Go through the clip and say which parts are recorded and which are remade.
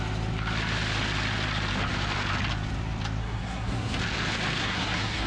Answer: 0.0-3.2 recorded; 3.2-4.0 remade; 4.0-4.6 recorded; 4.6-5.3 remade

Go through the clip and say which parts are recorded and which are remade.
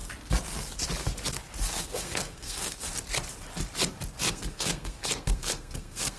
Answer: 0.0-1.8 recorded; 1.8-2.9 remade; 2.9-4.3 recorded; 4.3-6.2 remade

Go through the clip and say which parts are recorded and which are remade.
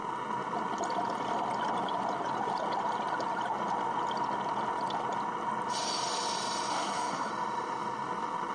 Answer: 0.0-6.7 recorded; 6.7-7.3 remade; 7.3-8.5 recorded